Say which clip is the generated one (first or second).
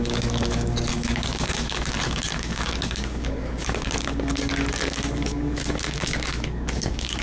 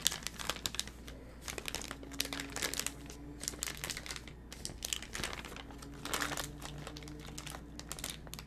first